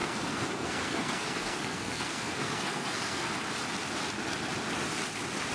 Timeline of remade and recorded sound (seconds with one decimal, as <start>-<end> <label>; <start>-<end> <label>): 0.0-3.3 remade; 3.3-5.5 recorded